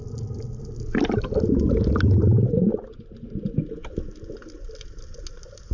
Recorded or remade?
recorded